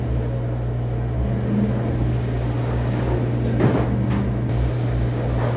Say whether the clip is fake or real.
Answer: real